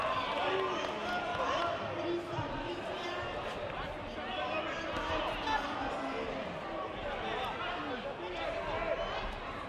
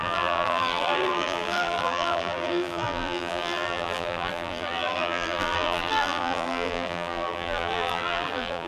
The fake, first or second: second